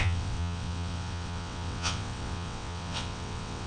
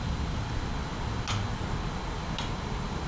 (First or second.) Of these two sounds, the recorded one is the second